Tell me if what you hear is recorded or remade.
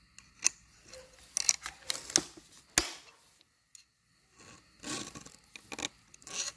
recorded